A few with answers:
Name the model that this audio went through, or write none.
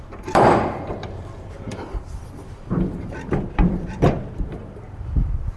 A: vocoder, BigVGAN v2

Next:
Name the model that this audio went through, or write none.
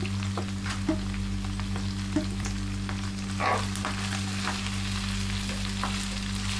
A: none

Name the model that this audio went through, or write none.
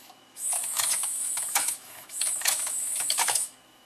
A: autoencoder, DAC-VAE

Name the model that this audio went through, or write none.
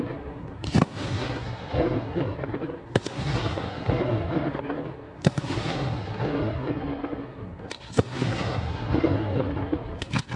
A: codec, SNAC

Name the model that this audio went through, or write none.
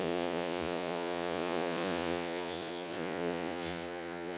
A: vocoder, Vocos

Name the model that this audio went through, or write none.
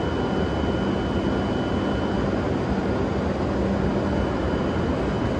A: none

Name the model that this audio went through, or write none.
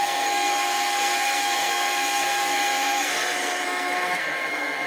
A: codec, SNAC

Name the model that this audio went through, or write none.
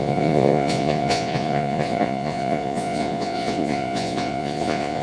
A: vocoder, Vocos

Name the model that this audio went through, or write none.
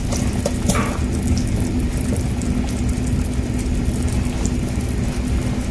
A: vocoder, BigVGAN v2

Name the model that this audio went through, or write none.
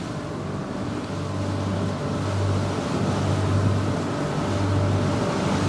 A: none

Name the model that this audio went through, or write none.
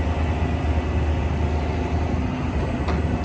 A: none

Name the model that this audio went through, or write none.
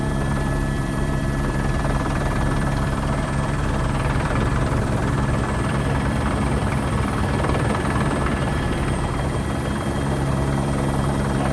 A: vocoder, BigVGAN v2